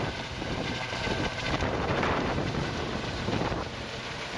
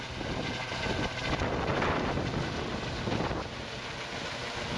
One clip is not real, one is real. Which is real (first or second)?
second